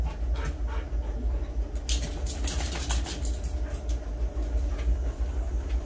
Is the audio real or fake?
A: real